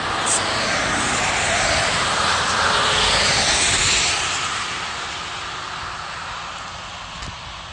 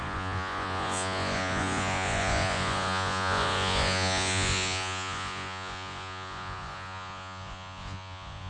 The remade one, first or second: second